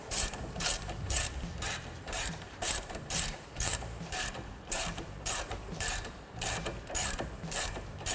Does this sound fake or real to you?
fake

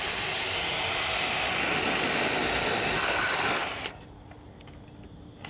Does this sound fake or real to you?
real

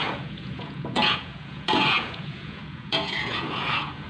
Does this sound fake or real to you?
fake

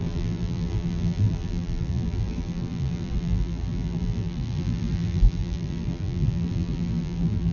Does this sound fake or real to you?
fake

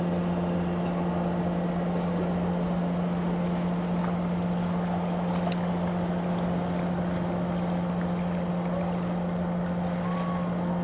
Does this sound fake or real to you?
real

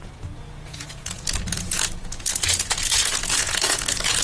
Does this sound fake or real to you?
fake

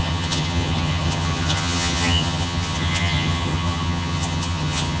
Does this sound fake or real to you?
fake